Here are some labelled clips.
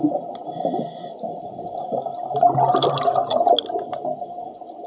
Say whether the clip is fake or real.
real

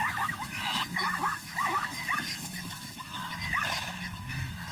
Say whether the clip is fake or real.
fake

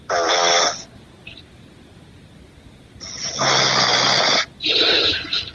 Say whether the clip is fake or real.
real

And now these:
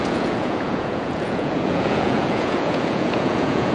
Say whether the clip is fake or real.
fake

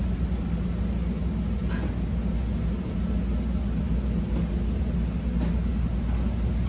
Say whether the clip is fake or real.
real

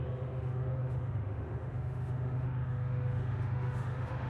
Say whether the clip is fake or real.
fake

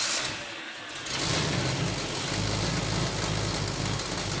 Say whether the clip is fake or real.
real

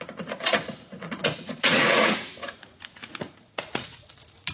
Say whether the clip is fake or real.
fake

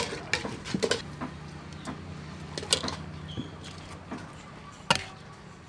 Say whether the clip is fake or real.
real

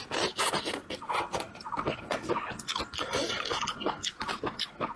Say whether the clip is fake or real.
real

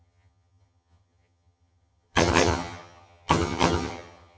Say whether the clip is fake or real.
fake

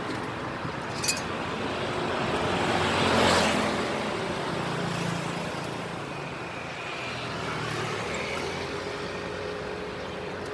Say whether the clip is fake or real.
real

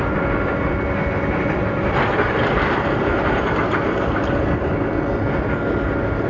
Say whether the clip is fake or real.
real